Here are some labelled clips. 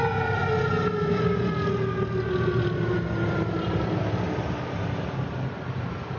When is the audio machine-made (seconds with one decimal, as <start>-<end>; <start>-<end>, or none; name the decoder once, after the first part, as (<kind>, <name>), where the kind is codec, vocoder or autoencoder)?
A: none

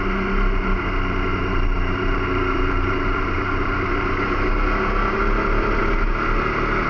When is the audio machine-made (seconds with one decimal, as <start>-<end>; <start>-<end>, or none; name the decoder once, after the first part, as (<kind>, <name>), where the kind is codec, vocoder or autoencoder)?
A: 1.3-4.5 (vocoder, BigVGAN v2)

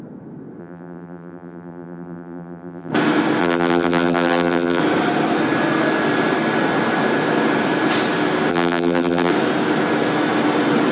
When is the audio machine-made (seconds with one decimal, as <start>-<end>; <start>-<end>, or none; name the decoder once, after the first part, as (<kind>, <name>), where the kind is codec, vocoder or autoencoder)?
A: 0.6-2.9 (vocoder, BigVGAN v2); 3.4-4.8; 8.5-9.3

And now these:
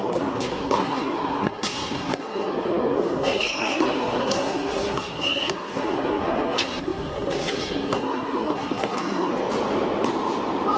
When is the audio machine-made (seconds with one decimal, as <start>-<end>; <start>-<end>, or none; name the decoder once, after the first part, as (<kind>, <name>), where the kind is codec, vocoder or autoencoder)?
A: 0.0-9.3 (codec, SNAC)